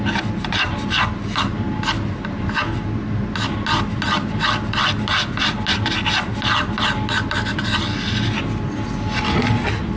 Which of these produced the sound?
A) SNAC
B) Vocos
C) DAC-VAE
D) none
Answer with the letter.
D